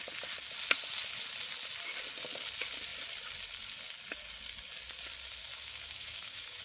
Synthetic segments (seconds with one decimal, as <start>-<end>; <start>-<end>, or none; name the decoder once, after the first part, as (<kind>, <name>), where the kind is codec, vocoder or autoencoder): 5.5-6.6 (autoencoder, DAC-VAE)

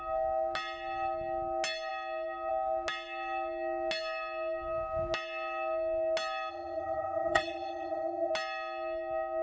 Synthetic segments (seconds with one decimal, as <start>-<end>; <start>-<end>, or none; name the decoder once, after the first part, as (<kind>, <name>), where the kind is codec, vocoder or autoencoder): 6.5-8.3 (vocoder, HiFi-GAN)

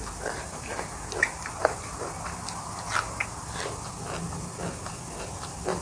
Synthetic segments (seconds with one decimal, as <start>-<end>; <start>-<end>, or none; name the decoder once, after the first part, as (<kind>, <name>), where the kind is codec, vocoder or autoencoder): none

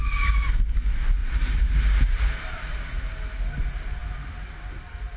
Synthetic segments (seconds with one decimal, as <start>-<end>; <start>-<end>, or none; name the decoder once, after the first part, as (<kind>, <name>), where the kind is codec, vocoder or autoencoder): 1.2-2.4 (vocoder, BigVGAN v2)